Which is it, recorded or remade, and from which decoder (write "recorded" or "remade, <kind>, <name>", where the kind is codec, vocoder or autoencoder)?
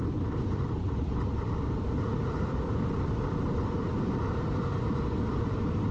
remade, vocoder, BigVGAN v2